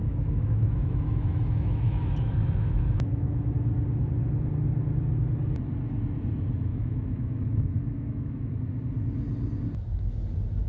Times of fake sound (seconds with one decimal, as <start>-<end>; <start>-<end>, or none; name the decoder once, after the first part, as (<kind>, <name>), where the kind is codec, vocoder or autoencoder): 0.0-3.5 (autoencoder, DAC-VAE); 6.7-8.5